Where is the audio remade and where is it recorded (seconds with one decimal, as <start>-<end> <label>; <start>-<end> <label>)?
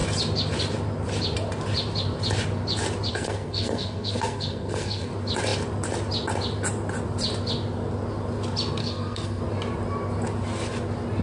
0.0-3.1 recorded; 3.1-5.1 remade; 5.1-8.8 recorded; 8.8-9.4 remade; 9.4-11.2 recorded